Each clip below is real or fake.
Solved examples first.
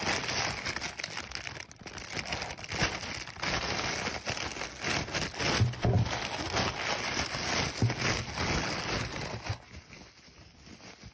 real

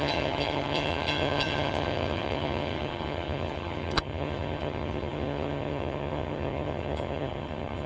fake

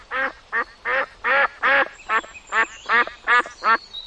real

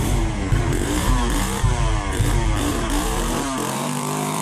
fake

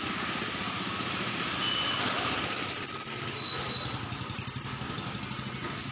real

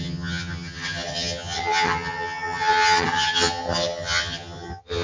fake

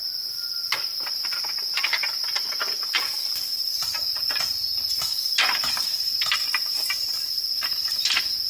real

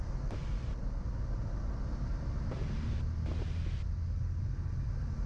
real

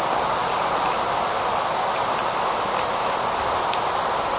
real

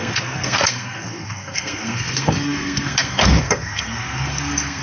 fake